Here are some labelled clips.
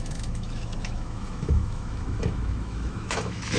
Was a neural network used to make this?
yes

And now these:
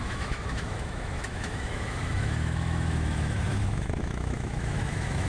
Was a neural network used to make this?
yes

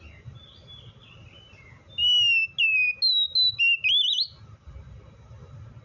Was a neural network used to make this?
no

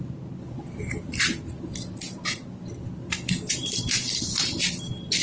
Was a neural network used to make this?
no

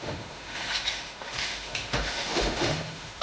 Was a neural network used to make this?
yes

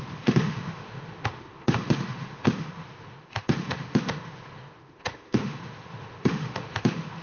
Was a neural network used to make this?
yes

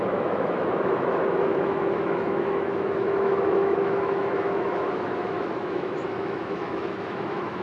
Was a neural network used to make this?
yes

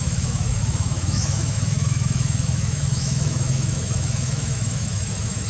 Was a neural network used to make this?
yes